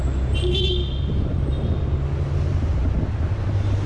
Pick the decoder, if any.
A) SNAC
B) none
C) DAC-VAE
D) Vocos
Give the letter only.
B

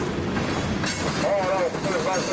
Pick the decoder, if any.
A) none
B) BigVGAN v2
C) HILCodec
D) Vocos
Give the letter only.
A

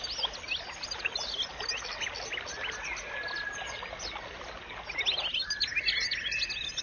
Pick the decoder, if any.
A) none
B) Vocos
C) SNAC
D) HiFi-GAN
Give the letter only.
A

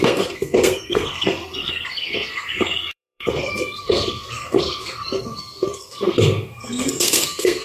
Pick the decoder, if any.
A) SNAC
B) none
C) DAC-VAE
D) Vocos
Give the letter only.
A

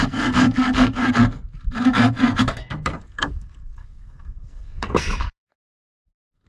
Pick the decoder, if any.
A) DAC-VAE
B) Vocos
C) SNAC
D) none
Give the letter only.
C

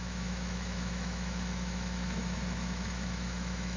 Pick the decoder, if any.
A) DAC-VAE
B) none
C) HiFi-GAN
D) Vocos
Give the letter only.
A